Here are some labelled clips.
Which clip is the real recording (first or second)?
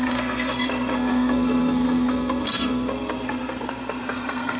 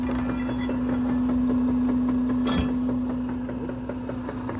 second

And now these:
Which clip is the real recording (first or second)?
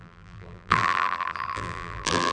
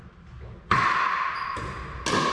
second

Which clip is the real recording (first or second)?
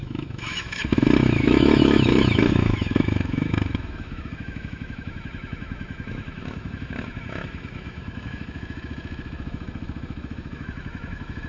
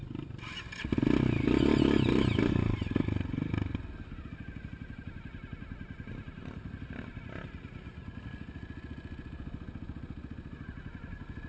second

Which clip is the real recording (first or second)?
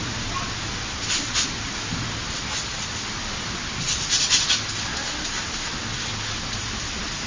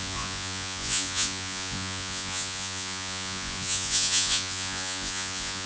first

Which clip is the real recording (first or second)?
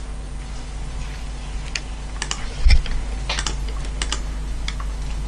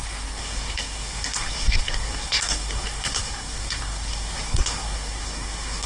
first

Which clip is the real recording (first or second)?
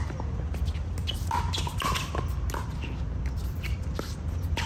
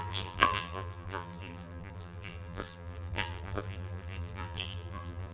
first